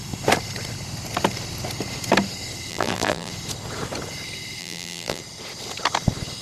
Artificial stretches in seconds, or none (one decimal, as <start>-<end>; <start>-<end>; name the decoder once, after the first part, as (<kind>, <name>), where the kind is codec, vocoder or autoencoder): 2.7-3.3 (vocoder, BigVGAN v2); 4.6-5.2